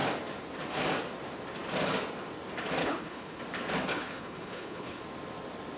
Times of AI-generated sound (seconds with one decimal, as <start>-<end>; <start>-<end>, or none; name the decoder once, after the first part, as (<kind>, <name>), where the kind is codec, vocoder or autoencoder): 2.8-3.4 (codec, HILCodec); 3.9-5.0